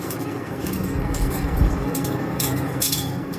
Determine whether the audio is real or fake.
fake